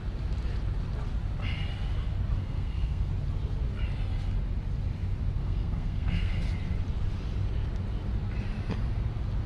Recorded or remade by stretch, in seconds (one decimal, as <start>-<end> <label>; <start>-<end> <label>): 0.0-2.4 recorded; 2.4-3.1 remade; 3.1-5.4 recorded; 5.4-6.3 remade; 6.3-9.5 recorded